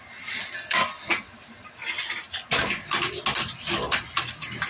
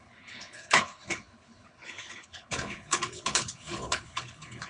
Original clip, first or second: first